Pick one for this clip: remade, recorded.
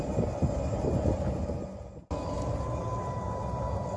recorded